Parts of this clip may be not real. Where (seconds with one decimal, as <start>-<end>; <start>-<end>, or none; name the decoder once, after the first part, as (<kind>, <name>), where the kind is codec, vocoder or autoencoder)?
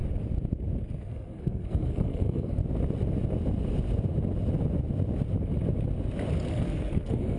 0.9-2.6 (codec, SNAC); 6.5-7.4